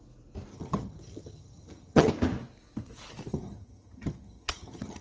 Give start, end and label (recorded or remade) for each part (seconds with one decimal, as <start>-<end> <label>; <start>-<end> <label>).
0.0-0.5 recorded; 0.5-2.1 remade; 2.1-3.3 recorded; 3.3-5.0 remade